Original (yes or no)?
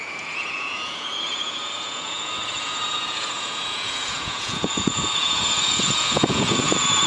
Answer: no